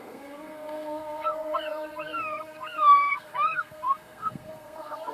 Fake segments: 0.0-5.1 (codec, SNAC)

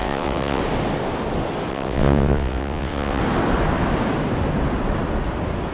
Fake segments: 0.0-0.6 (vocoder, WaveNeXt); 1.7-3.2

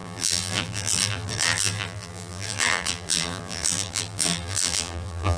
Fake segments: 0.0-5.4 (vocoder, BigVGAN v2)

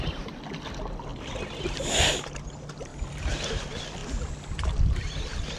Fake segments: 1.1-2.2 (vocoder, BigVGAN v2); 2.9-3.6

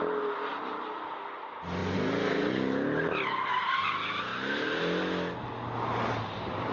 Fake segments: none

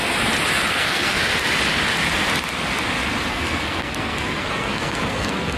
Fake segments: 0.7-1.2 (codec, SNAC); 3.3-5.6